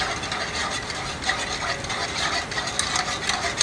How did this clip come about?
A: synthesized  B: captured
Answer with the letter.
B